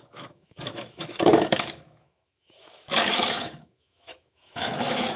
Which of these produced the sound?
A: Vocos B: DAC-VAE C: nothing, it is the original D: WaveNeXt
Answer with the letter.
B